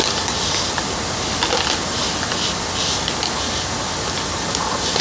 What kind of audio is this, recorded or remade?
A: recorded